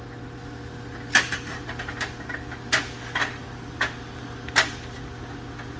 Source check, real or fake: real